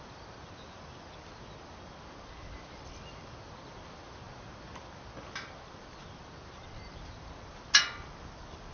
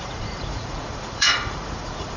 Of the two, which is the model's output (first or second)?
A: second